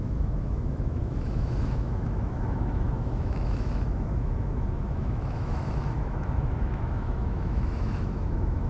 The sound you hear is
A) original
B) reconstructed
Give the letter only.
B